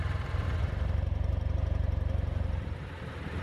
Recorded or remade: remade